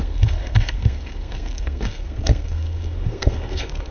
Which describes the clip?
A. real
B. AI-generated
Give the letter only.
B